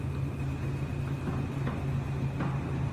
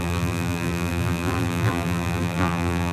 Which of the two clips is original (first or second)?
first